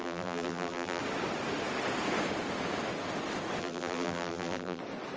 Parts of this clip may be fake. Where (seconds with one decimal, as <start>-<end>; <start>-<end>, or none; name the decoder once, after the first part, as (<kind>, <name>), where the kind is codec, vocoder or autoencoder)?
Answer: 0.0-1.0 (vocoder, BigVGAN v2); 3.6-4.8